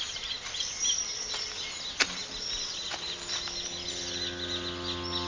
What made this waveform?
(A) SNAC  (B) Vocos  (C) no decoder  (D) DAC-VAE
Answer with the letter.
C